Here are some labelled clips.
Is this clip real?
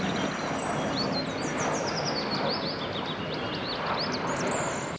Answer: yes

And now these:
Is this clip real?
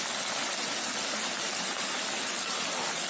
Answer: yes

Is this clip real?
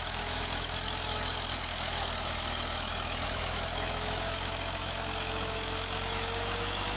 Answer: no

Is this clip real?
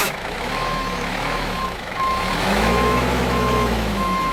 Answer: no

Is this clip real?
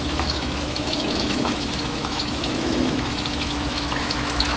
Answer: no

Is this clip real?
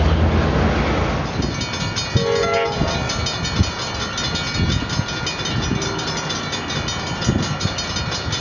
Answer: yes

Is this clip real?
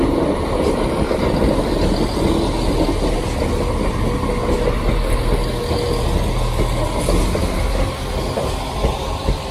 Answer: yes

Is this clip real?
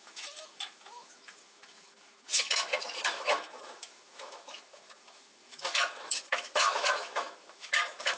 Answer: no